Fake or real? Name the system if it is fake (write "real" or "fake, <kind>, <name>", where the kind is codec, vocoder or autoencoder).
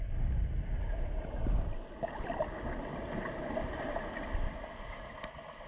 real